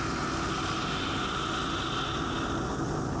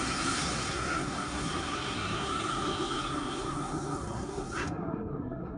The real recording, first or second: first